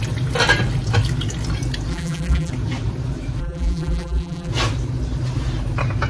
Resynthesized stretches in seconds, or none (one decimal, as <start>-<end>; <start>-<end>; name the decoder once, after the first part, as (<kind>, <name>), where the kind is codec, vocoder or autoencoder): 1.9-2.5 (vocoder, BigVGAN v2); 3.4-4.5